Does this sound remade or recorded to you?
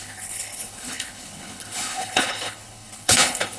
remade